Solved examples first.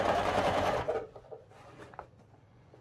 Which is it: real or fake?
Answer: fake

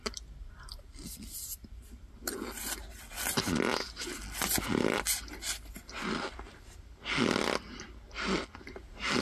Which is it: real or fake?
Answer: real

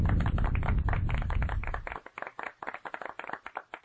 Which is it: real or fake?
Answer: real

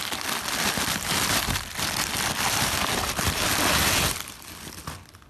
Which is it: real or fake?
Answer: fake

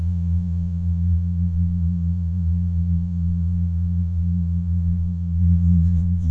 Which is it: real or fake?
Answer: fake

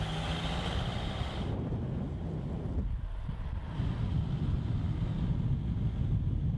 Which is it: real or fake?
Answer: real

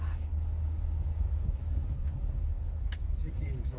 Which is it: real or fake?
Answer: fake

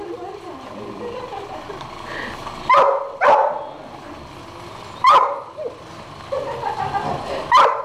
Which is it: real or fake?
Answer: real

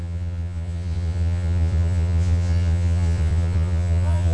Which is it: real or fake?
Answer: fake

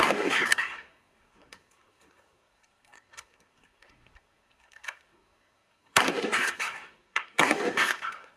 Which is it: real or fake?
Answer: fake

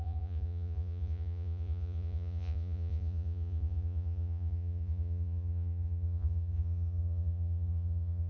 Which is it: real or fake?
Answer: fake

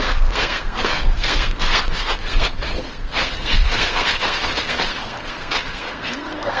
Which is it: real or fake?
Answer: fake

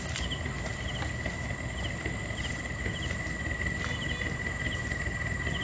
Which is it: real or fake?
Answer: real